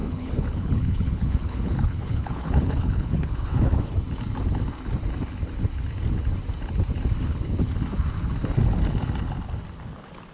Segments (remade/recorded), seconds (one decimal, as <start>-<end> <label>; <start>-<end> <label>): 0.0-3.8 remade; 3.8-10.3 recorded